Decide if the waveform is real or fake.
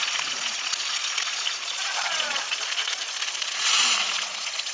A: fake